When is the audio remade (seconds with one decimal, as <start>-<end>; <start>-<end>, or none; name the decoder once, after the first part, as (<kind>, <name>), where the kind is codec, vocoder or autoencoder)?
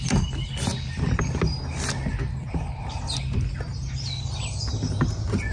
none